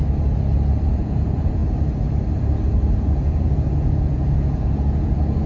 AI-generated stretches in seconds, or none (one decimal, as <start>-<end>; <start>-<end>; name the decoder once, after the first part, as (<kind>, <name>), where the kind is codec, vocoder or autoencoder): 1.0-1.6 (vocoder, Vocos); 3.0-5.5